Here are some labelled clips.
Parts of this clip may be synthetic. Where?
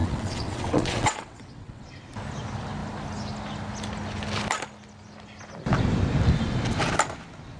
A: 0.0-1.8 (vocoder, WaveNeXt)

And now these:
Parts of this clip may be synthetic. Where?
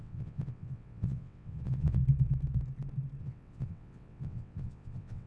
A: 0.0-2.0 (vocoder, WaveNeXt); 3.2-5.3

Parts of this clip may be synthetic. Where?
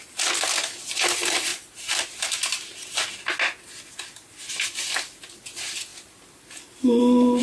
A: none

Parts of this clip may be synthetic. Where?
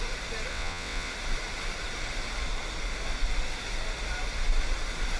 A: 0.5-1.1 (vocoder, WaveNeXt)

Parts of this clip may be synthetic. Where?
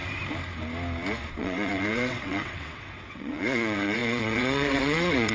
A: 1.4-5.3 (vocoder, WaveNeXt)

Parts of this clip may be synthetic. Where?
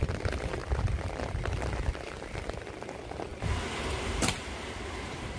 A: none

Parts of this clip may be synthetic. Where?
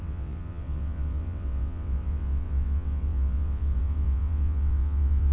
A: 0.0-5.3 (vocoder, WaveNeXt)